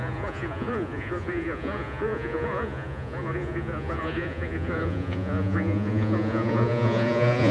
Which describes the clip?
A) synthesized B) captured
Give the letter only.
A